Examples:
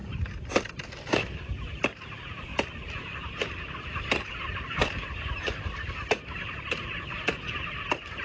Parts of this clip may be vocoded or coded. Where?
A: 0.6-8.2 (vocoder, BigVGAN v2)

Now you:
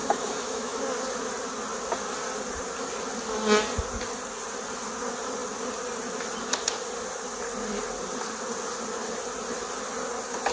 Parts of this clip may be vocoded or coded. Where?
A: 0.0-0.8 (autoencoder, DAC-VAE)

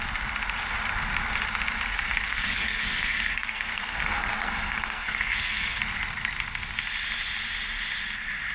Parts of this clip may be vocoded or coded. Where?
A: 2.3-5.8 (codec, SNAC)

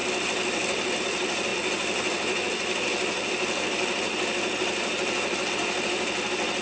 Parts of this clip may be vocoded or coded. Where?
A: none